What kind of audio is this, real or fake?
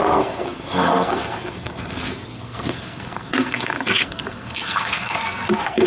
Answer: fake